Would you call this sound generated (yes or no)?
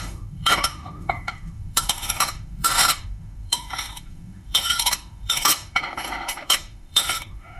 yes